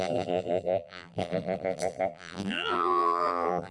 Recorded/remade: remade